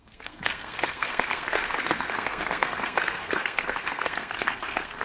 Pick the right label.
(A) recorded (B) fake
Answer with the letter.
B